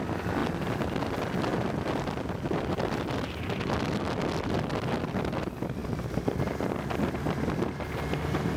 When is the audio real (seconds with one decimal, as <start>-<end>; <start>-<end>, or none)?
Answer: 0.0-0.4; 1.0-1.5; 3.2-8.6